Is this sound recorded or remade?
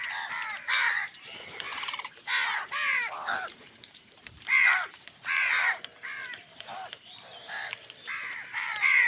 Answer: remade